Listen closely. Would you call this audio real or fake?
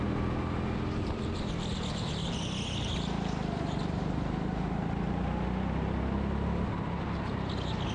real